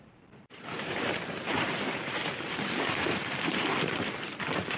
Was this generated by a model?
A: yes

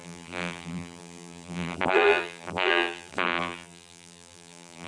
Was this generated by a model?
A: yes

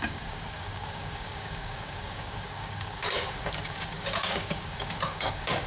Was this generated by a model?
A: yes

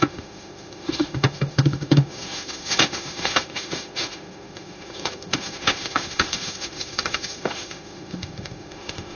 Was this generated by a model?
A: yes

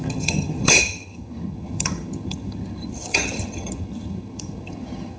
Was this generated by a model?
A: yes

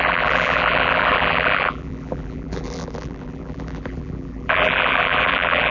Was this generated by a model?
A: yes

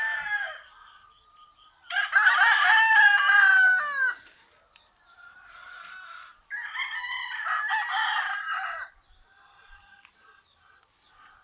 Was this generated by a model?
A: no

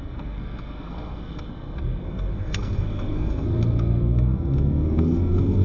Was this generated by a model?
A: yes